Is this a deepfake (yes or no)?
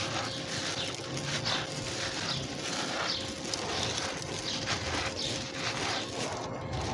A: no